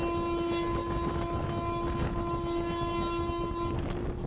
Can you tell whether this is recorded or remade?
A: recorded